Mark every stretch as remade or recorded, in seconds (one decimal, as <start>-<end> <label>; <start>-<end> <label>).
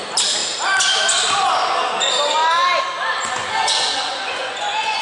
0.0-3.4 recorded; 3.4-5.0 remade